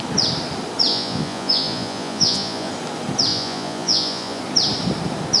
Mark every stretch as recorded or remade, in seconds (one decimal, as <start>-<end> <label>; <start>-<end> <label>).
0.0-0.9 recorded; 0.9-2.7 remade; 2.7-3.3 recorded; 3.3-4.4 remade; 4.4-5.4 recorded